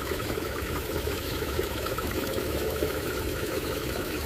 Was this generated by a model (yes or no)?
yes